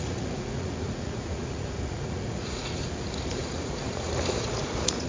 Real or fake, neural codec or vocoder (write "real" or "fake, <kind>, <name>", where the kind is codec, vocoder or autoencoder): fake, vocoder, Vocos